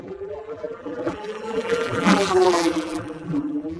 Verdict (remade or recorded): remade